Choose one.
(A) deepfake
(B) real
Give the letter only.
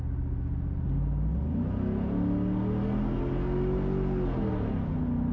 B